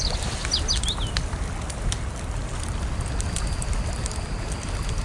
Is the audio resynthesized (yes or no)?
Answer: no